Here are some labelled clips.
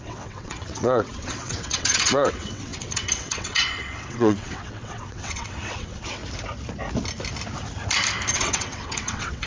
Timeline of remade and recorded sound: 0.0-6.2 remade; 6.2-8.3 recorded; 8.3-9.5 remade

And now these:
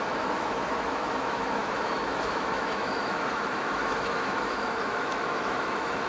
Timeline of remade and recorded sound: 0.0-6.1 remade

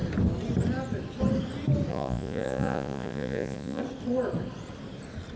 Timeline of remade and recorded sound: 0.0-1.9 recorded; 1.9-3.8 remade; 3.8-5.4 recorded

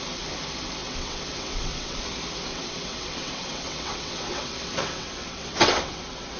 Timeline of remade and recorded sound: 0.0-0.8 recorded; 0.8-2.0 remade; 2.0-2.5 recorded; 2.5-6.4 remade

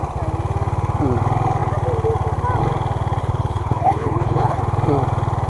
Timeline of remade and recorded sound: 0.0-3.2 recorded; 3.2-4.6 remade; 4.6-5.5 recorded

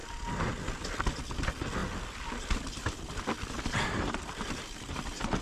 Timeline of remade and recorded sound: 0.0-1.8 recorded; 1.8-5.0 remade; 5.0-5.4 recorded

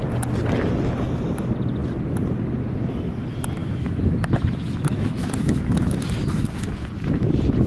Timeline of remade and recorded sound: 0.0-3.6 recorded; 3.6-6.9 remade; 6.9-7.7 recorded

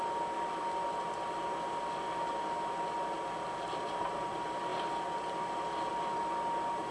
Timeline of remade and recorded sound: 0.0-6.9 recorded